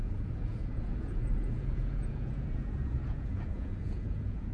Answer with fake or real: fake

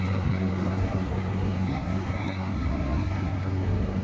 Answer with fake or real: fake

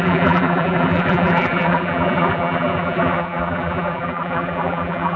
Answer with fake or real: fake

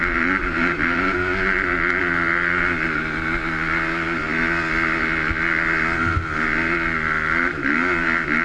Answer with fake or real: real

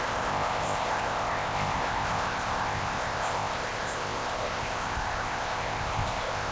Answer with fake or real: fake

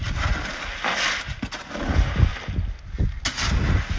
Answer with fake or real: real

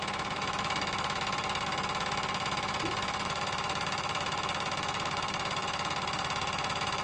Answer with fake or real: fake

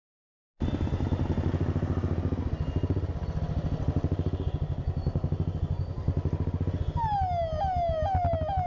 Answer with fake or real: real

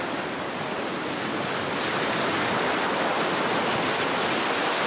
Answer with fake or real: real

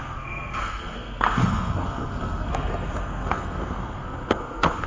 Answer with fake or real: fake